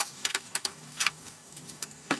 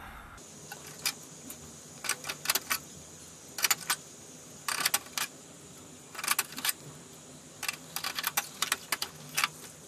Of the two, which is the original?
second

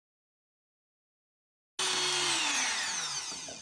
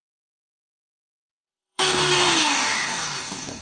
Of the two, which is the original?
first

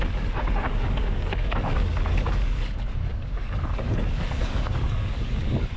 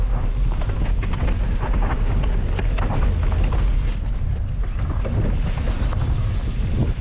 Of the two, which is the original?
second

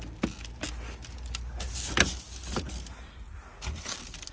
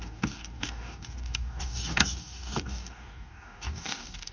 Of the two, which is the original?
first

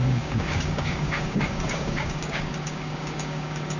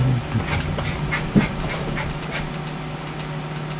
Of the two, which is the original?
second